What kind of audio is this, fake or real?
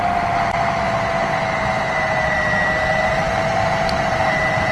real